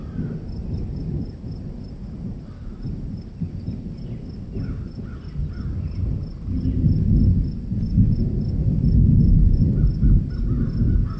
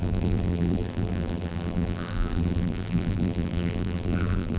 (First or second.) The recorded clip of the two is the first